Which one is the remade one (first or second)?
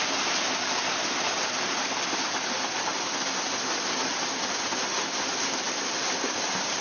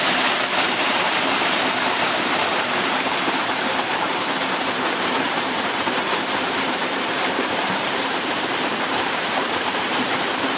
second